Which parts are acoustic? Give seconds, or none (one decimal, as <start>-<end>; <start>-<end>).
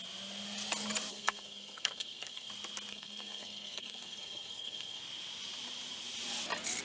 0.0-1.1; 2.5-2.9; 5.0-6.8